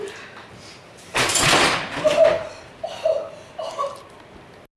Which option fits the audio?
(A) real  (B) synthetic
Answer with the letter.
A